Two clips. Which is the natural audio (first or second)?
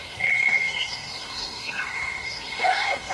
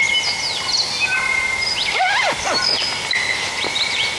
second